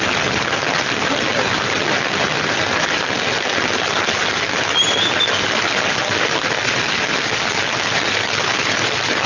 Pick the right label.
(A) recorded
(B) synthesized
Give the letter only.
A